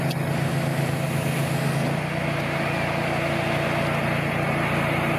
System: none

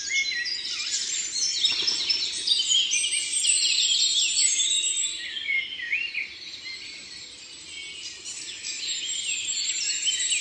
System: none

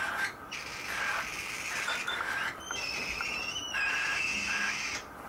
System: none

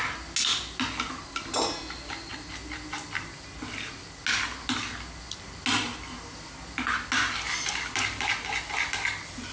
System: none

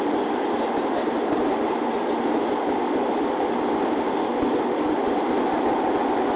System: none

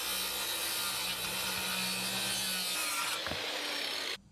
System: none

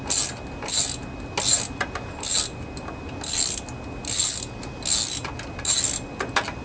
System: none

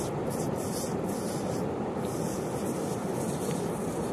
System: none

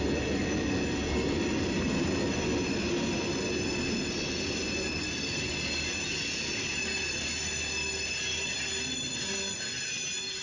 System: none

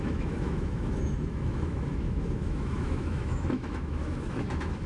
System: autoencoder, DAC-VAE